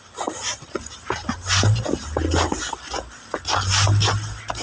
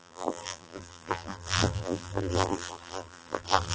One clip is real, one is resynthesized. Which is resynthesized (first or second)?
second